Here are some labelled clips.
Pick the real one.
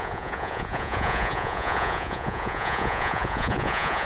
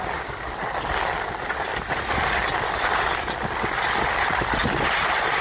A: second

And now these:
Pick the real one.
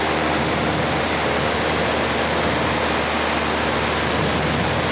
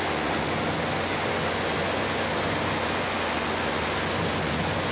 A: first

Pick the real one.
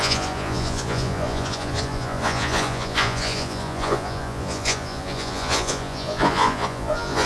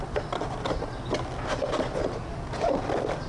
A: second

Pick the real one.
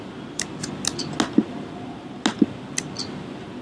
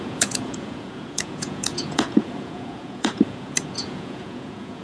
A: first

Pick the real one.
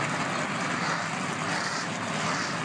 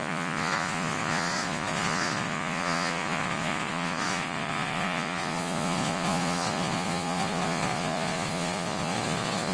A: first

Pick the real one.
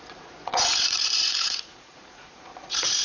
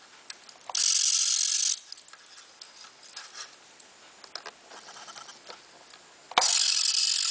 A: second